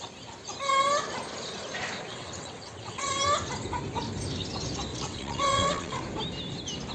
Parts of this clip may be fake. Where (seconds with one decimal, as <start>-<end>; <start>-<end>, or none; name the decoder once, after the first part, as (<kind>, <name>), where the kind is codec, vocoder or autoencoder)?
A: 2.1-3.1 (vocoder, WaveNeXt); 4.9-6.0